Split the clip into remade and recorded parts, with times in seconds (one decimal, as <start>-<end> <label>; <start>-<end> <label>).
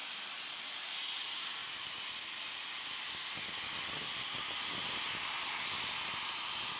0.0-6.8 recorded